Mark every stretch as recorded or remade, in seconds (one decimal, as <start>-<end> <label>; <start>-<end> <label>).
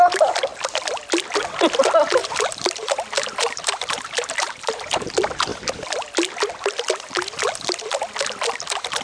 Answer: 0.0-2.2 recorded; 2.2-5.1 remade; 5.1-9.0 recorded